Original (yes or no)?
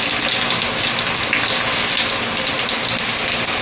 yes